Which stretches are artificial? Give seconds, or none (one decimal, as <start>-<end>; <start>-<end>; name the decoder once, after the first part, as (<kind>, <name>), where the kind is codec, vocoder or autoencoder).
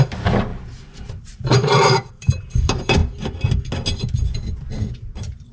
0.0-3.0 (vocoder, BigVGAN v2); 5.1-5.5